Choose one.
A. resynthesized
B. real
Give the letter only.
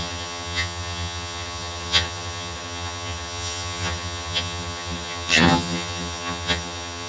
A